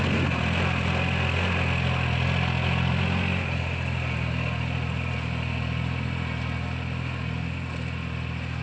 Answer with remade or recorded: recorded